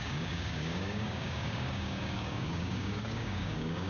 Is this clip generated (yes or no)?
yes